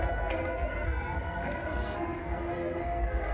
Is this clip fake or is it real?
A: fake